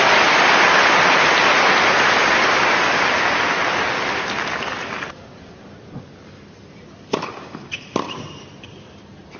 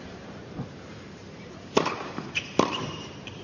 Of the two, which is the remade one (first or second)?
second